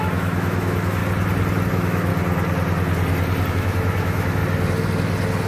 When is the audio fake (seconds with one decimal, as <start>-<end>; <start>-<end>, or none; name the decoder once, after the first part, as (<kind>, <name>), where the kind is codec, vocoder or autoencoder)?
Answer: 0.0-1.0 (autoencoder, DAC-VAE); 1.7-2.1; 3.5-4.4